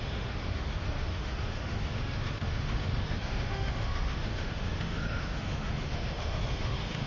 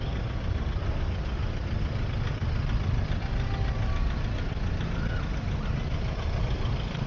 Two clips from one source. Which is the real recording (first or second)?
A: second